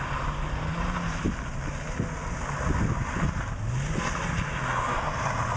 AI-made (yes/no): no